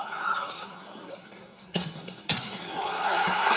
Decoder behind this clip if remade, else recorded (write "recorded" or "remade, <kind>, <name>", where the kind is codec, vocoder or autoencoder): remade, codec, SNAC